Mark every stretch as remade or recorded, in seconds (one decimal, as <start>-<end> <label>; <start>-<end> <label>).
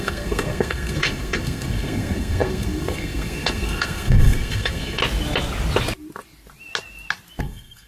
0.0-5.0 remade; 5.0-7.4 recorded; 7.4-7.9 remade